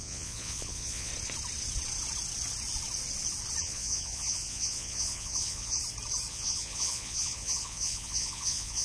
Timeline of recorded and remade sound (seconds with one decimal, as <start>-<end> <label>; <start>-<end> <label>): 0.0-1.1 remade; 1.1-3.6 recorded; 3.6-5.8 remade; 5.8-6.3 recorded; 6.3-8.8 remade